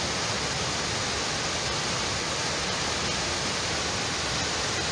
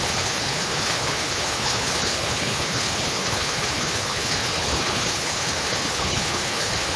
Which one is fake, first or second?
second